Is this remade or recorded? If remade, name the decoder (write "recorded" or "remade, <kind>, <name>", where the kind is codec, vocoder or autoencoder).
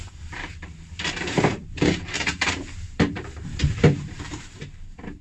remade, vocoder, BigVGAN v2